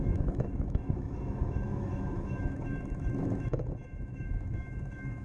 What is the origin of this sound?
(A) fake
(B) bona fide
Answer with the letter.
A